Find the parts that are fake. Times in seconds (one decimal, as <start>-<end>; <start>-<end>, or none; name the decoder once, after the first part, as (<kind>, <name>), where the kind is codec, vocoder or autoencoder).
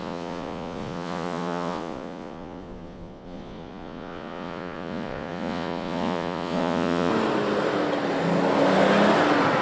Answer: 0.0-7.1 (vocoder, Vocos)